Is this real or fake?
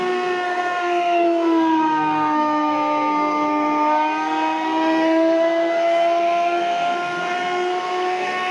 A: fake